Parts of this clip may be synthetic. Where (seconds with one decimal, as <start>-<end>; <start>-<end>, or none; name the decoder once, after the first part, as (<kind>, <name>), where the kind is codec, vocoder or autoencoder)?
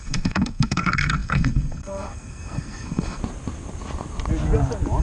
0.0-3.2 (codec, SNAC)